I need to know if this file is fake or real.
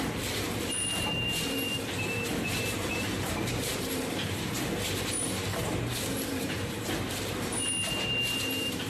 fake